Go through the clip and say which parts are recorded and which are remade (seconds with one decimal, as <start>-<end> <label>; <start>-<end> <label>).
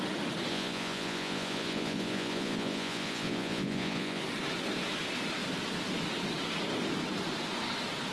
0.0-0.5 recorded; 0.5-4.2 remade; 4.2-8.1 recorded